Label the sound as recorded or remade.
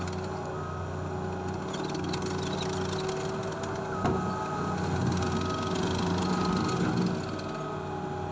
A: recorded